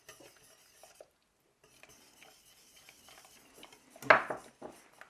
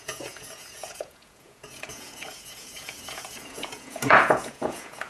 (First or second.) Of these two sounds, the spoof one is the second